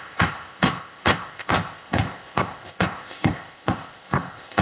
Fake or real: fake